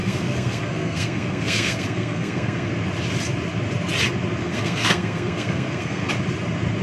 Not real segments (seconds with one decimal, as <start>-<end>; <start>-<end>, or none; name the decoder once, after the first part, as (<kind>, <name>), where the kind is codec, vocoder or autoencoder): 0.0-2.7 (codec, SNAC); 4.4-6.1